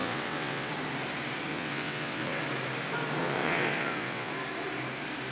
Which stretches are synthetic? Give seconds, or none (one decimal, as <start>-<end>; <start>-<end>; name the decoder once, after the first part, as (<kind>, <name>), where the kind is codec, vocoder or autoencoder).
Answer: 0.0-0.7 (vocoder, WaveNeXt); 1.5-2.4; 3.2-4.3